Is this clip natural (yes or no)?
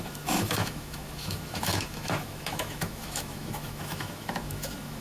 no